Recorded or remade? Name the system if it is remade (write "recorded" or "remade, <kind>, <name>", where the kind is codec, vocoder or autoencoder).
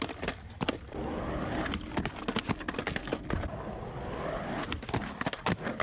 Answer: recorded